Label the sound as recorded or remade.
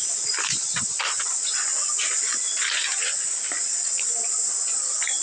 recorded